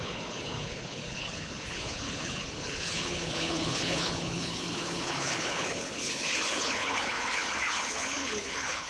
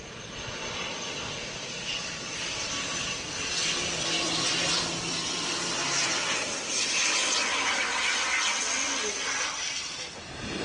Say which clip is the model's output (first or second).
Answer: first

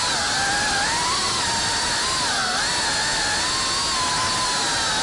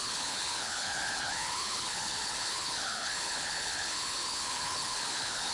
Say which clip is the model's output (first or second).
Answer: second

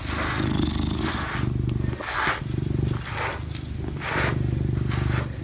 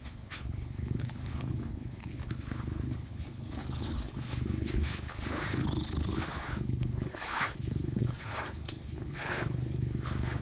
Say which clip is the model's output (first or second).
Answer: second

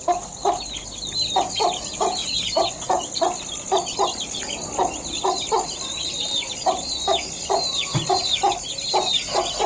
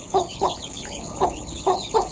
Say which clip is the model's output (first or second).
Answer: second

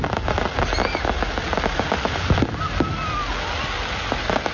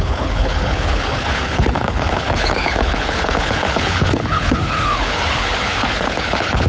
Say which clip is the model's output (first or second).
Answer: second